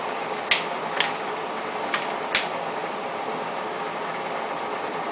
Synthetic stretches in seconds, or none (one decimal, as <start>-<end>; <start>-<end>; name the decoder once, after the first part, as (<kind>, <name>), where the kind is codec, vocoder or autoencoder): none